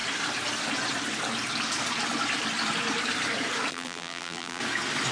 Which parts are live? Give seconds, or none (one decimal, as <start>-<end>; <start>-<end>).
0.0-3.7; 4.6-5.1